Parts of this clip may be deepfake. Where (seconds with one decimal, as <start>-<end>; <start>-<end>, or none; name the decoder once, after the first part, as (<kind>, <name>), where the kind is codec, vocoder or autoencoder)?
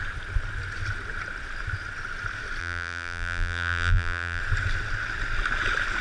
2.6-4.4 (vocoder, BigVGAN v2)